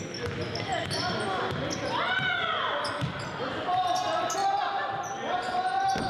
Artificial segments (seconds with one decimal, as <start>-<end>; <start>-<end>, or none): 4.4-5.6